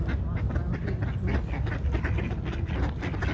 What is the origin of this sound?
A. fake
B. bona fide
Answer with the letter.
B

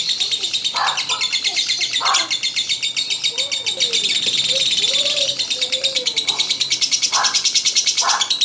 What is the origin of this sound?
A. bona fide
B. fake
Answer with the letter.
A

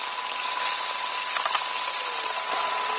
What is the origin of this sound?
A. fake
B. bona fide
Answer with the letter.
B